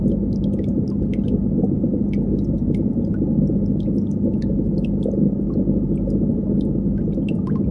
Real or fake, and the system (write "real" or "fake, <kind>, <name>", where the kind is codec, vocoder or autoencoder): real